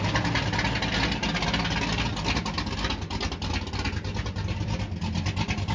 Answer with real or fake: real